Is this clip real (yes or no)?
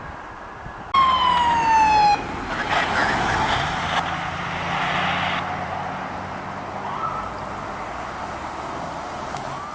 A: yes